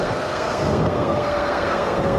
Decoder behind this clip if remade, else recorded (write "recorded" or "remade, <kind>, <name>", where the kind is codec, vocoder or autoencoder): remade, codec, SNAC